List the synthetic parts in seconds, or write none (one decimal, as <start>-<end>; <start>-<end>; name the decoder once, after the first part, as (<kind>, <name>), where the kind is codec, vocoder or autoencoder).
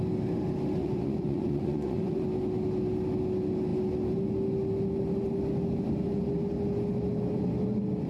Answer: 0.8-2.2 (vocoder, Vocos)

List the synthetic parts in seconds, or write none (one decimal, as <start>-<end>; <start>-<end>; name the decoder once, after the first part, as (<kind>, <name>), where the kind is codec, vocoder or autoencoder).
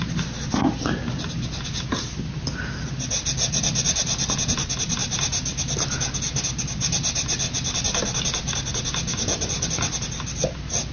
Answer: none